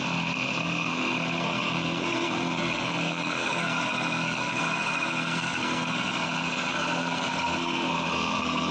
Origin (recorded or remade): remade